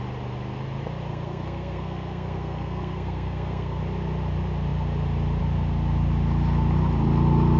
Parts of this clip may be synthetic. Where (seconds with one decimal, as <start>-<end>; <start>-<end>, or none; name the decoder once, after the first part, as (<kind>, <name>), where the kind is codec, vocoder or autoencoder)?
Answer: 1.1-3.8 (codec, SNAC)